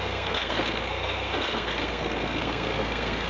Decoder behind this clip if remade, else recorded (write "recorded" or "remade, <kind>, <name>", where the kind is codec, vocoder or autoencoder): remade, codec, SNAC